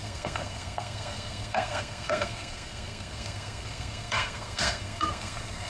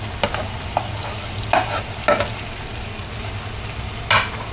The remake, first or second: first